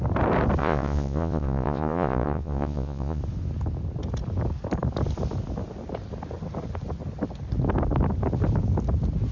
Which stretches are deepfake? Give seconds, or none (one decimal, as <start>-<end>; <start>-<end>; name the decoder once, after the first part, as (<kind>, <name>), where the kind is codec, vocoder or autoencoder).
0.6-3.2 (vocoder, Vocos)

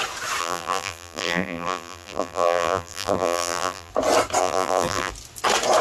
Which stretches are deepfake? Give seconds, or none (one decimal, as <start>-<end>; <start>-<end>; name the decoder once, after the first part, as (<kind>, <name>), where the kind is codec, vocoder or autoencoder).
0.4-3.9 (vocoder, BigVGAN v2); 4.4-5.1

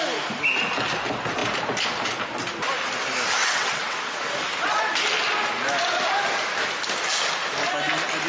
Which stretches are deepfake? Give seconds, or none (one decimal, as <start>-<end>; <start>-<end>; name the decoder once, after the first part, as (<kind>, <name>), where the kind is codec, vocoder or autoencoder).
3.4-4.0 (vocoder, WaveNeXt)

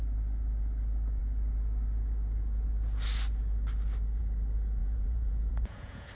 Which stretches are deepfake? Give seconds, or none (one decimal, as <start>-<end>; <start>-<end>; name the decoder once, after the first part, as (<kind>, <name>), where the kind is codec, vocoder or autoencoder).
4.8-6.1 (vocoder, Vocos)

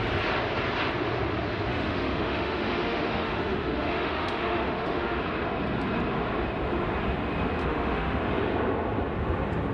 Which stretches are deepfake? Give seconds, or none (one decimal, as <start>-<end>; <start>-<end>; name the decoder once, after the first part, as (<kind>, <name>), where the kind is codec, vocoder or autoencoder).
1.7-5.2 (autoencoder, DAC-VAE); 7.6-8.2

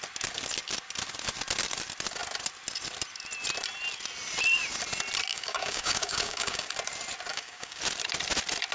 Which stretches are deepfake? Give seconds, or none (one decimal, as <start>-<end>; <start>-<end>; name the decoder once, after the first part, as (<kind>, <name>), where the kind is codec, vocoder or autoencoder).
5.3-6.7 (codec, DAC); 7.3-7.8